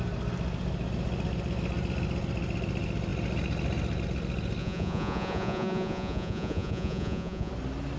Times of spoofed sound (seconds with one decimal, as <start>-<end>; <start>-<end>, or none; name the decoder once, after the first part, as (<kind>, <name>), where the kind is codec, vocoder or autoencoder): 4.6-7.5 (vocoder, Vocos)